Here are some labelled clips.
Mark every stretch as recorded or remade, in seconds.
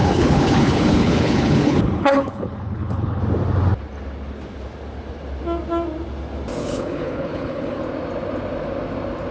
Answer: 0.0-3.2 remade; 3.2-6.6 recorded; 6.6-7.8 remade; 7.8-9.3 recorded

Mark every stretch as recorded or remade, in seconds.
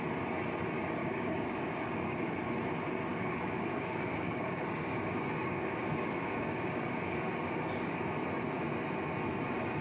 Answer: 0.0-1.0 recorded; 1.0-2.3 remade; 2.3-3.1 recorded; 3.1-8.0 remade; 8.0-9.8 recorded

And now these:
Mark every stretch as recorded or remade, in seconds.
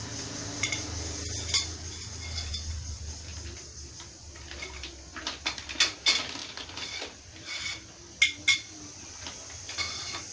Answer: 0.0-10.3 recorded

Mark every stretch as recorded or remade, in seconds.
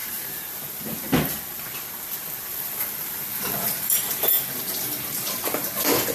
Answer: 0.0-1.4 remade; 1.4-2.5 recorded; 2.5-4.3 remade; 4.3-6.1 recorded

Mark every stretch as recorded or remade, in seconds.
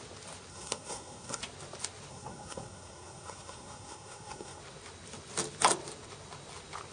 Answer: 0.0-0.5 recorded; 0.5-1.4 remade; 1.4-2.1 recorded; 2.1-4.6 remade; 4.6-6.9 recorded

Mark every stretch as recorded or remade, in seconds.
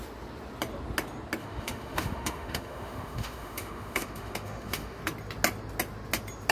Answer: 0.0-1.4 recorded; 1.4-5.0 remade; 5.0-6.5 recorded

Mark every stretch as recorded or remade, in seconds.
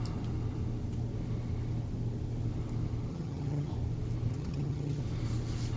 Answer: 0.0-3.1 recorded; 3.1-3.7 remade; 3.7-4.3 recorded; 4.3-5.0 remade; 5.0-5.8 recorded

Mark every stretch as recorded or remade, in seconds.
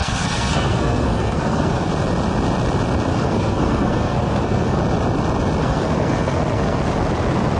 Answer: 0.0-1.9 remade; 1.9-3.1 recorded; 3.1-4.8 remade; 4.8-5.6 recorded; 5.6-6.8 remade; 6.8-7.6 recorded